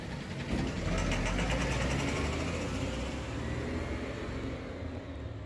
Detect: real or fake real